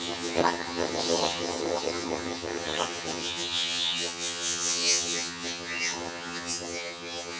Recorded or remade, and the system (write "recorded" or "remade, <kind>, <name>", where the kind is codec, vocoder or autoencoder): remade, vocoder, HiFi-GAN